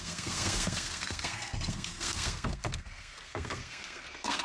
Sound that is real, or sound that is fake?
fake